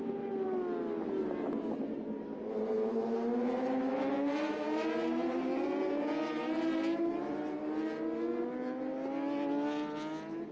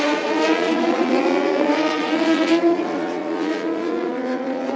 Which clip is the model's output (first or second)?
second